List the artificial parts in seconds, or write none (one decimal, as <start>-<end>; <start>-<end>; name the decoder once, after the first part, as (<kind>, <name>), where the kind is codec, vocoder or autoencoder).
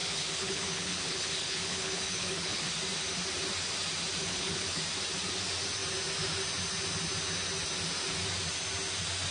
0.0-2.7 (codec, HILCodec); 4.2-4.8